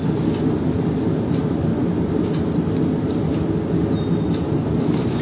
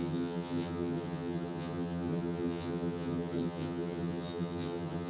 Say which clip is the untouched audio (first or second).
first